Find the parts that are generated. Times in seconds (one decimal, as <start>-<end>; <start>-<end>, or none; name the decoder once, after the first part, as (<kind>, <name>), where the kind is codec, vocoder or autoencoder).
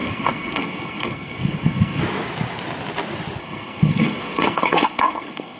0.0-2.0 (codec, SNAC); 3.4-5.6